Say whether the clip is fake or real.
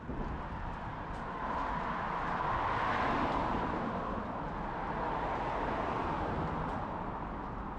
real